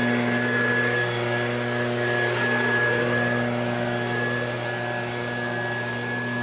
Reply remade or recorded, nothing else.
recorded